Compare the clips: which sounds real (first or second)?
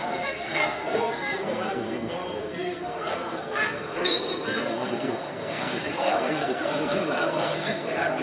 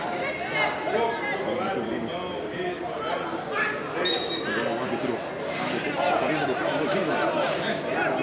second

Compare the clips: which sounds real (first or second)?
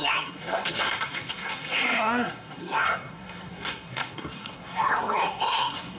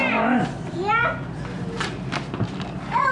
second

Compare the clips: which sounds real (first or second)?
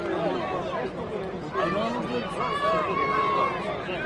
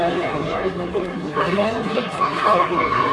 first